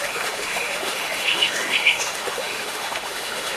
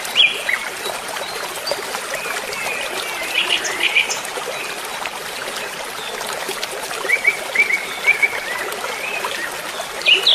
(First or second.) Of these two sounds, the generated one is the first